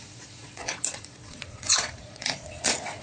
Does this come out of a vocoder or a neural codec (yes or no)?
yes